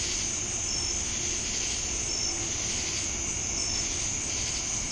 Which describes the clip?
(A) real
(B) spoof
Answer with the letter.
A